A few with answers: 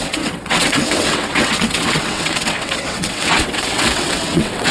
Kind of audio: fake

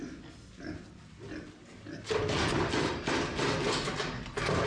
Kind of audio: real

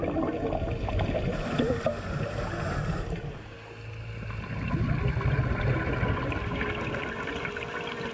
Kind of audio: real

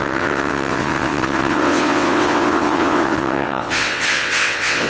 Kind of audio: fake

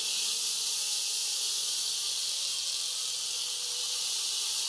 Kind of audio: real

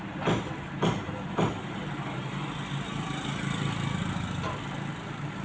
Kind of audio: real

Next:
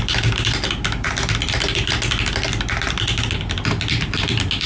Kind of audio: real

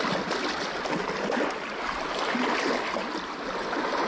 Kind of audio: real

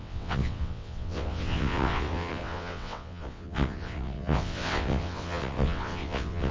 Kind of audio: fake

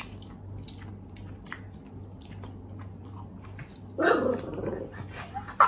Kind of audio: real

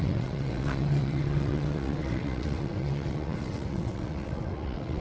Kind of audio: fake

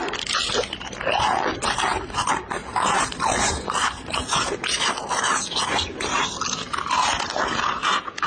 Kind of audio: real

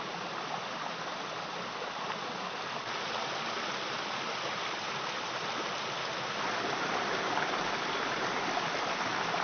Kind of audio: real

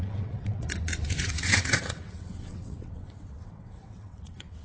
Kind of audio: fake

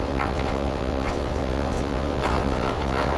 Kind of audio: fake